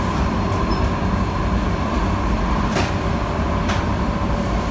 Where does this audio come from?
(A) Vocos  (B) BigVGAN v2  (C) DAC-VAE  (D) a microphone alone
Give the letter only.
B